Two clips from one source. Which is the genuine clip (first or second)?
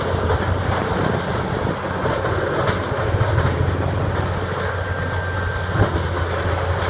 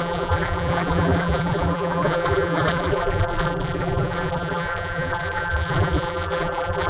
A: first